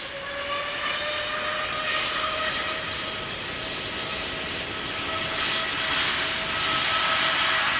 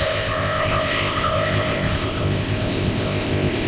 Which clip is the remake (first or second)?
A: second